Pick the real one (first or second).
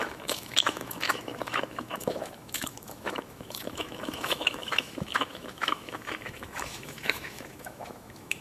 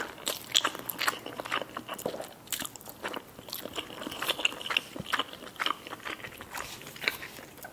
second